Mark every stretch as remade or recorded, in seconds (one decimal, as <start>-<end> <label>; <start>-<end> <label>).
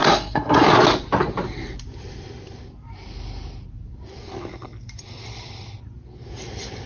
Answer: 0.0-0.7 remade; 0.7-6.9 recorded